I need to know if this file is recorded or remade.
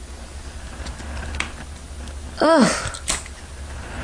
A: recorded